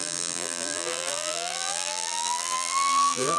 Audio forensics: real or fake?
fake